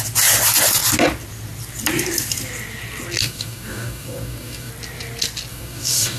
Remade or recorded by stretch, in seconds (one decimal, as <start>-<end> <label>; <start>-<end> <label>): 0.0-3.2 recorded; 3.2-4.7 remade; 4.7-5.5 recorded; 5.5-6.2 remade